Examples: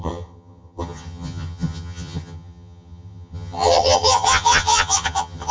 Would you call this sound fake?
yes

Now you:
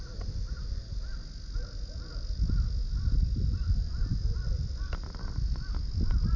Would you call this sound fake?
no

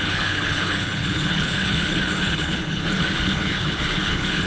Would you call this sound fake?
yes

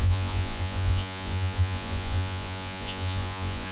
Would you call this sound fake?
yes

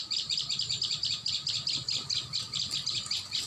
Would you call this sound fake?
no